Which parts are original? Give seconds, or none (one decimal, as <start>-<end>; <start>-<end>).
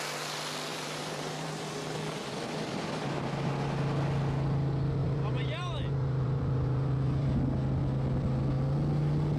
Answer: 0.0-0.7; 1.7-5.0; 7.4-9.4